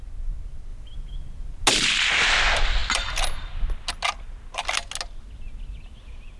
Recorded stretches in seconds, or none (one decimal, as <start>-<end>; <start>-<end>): 0.0-6.4

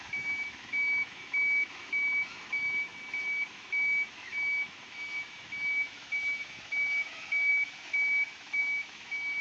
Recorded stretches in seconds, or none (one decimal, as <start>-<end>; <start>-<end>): 2.9-3.5

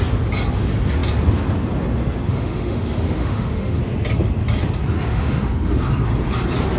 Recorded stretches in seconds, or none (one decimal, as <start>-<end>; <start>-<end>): 0.0-2.3; 3.8-5.1; 5.8-6.8

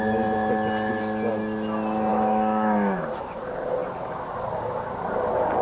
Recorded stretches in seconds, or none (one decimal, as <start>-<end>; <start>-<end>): 0.0-2.1; 3.4-5.6

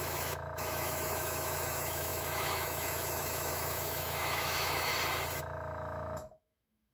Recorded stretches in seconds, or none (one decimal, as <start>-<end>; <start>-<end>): 4.9-5.4

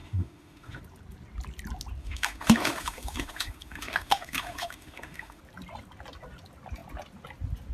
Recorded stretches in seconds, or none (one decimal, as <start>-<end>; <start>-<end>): 0.8-2.0; 5.4-7.7

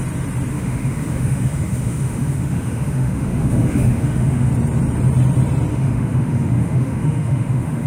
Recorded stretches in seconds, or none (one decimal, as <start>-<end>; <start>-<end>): 0.0-0.5; 4.5-5.7